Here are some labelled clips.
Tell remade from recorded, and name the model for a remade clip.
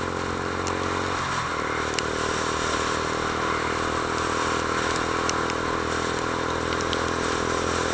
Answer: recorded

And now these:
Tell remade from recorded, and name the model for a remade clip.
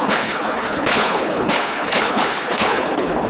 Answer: remade, codec, HILCodec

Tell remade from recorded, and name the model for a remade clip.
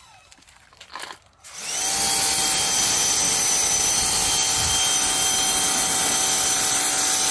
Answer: recorded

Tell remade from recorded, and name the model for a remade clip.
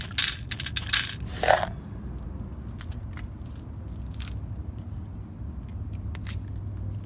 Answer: recorded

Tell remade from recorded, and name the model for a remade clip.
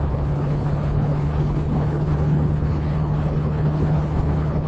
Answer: remade, codec, HILCodec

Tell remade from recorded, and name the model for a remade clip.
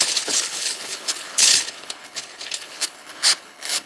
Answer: remade, codec, HILCodec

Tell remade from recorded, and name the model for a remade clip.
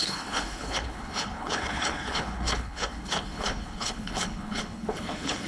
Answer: remade, codec, HILCodec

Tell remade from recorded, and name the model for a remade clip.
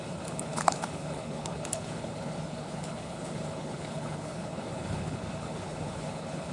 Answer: remade, codec, HILCodec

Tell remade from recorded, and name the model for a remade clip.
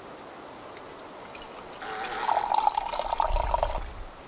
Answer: recorded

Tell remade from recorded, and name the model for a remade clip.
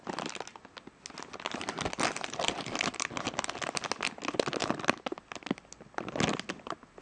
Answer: recorded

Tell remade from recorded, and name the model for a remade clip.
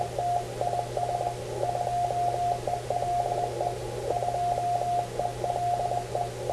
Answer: recorded